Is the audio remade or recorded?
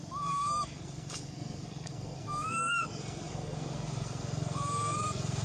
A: remade